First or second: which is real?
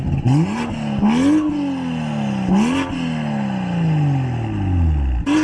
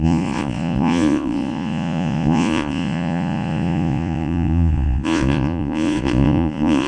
first